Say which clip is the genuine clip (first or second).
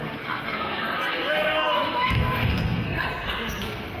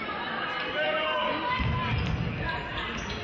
second